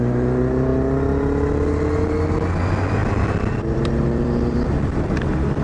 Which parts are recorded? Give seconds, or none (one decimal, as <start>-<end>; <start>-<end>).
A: 0.0-3.0